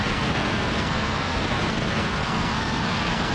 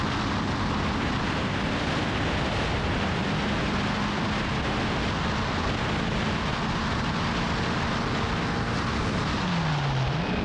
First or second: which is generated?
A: first